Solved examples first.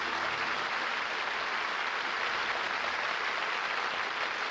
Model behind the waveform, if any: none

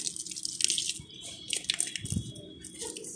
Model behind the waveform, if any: none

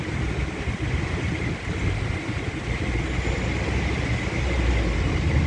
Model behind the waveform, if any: none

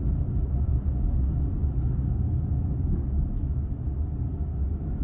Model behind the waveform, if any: none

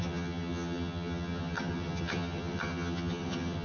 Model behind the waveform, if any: vocoder, HiFi-GAN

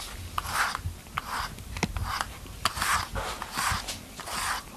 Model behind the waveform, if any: none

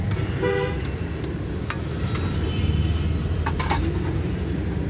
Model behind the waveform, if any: none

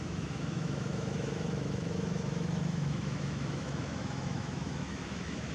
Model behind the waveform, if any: autoencoder, DAC-VAE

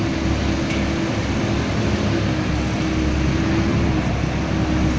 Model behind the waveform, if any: none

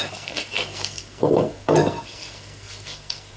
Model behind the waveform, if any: codec, SNAC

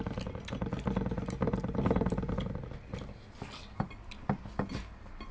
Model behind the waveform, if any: none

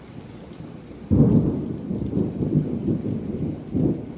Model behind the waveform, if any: none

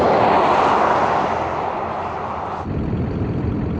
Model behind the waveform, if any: none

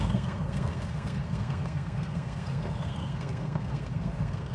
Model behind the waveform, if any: codec, SNAC